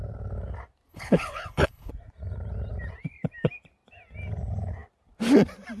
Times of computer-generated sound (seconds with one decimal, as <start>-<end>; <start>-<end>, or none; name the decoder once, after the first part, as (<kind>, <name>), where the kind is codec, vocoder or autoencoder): 0.9-1.9 (codec, HILCodec)